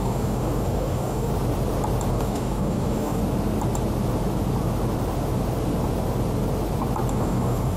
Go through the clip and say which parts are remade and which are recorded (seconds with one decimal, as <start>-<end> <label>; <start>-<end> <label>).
0.0-1.3 remade; 1.3-2.1 recorded; 2.1-3.2 remade; 3.2-7.1 recorded; 7.1-7.8 remade